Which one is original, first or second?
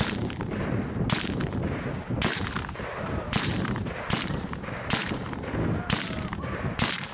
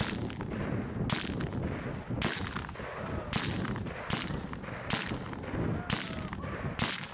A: second